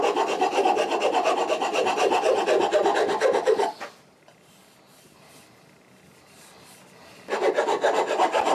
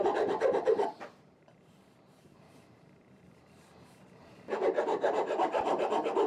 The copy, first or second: second